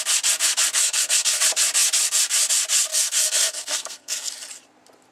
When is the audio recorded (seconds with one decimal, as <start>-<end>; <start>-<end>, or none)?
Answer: 0.0-0.8; 1.4-2.9; 4.3-5.1